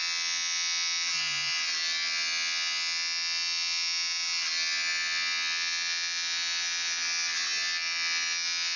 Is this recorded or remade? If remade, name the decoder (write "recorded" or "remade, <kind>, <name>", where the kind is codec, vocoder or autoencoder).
recorded